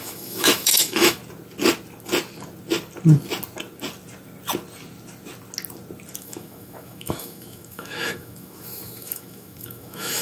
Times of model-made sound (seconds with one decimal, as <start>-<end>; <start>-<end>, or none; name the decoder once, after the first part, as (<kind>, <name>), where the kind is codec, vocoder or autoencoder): 0.0-1.2 (autoencoder, DAC-VAE); 6.2-10.2